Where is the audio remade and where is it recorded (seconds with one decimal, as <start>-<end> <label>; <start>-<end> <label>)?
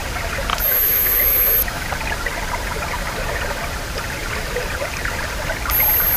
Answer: 0.0-0.5 recorded; 0.5-1.9 remade; 1.9-6.2 recorded